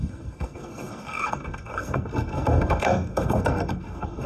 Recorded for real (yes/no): no